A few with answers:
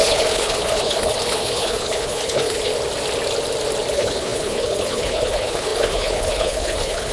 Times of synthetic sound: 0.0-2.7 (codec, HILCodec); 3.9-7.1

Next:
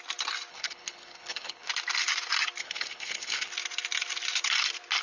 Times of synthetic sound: 0.5-1.7 (codec, HILCodec); 2.6-3.5

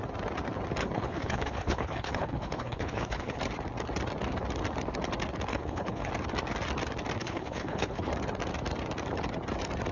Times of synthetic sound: 0.8-3.4 (codec, HILCodec); 5.5-6.1; 7.2-8.1

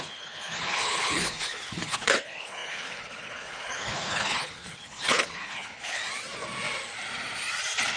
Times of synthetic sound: 0.0-6.0 (codec, HILCodec)

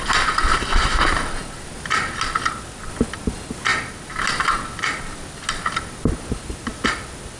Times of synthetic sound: none

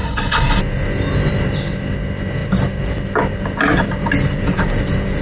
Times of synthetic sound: 0.0-0.6 (codec, HILCodec)

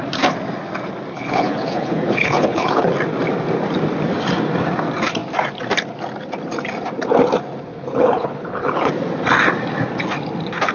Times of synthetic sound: 1.1-2.9 (codec, HILCodec); 7.7-8.9

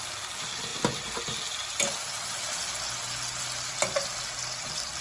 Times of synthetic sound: none